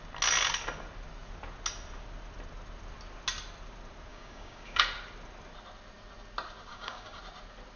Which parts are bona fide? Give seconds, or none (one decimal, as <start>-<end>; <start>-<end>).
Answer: 0.0-4.1; 4.8-6.7; 7.2-7.8